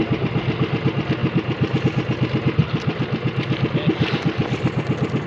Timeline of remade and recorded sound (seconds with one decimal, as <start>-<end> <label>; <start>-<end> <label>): 0.0-5.3 recorded